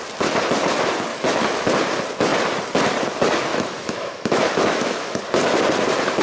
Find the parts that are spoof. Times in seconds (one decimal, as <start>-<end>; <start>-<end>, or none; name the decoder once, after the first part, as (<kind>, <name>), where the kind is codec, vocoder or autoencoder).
1.1-1.7 (autoencoder, DAC-VAE); 3.5-5.2